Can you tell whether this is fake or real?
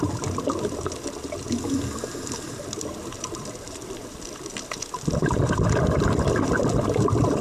fake